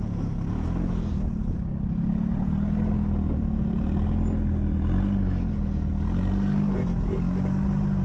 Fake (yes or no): no